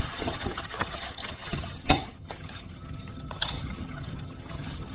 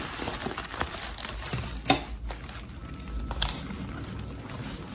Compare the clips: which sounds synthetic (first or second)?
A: first